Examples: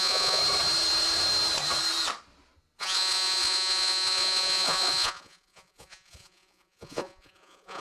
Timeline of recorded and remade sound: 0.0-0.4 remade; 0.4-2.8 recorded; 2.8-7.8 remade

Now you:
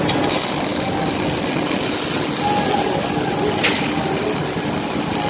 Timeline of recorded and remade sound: 0.0-5.3 recorded

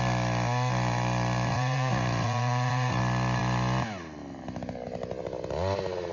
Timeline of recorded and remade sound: 0.0-1.5 recorded; 1.5-3.0 remade; 3.0-6.1 recorded

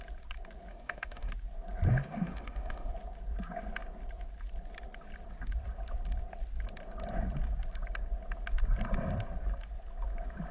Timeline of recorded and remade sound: 0.0-0.7 recorded; 0.7-1.3 remade; 1.3-1.9 recorded; 1.9-2.9 remade; 2.9-10.5 recorded

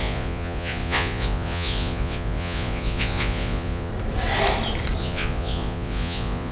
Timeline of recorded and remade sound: 0.0-3.9 remade; 3.9-5.0 recorded; 5.0-6.5 remade

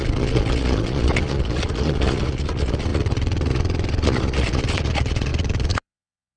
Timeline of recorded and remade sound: 0.0-6.4 remade

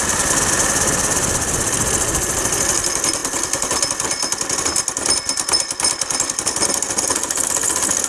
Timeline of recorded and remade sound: 0.0-8.1 recorded

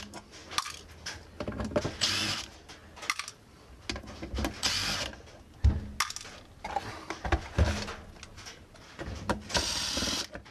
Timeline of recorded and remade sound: 0.0-10.5 recorded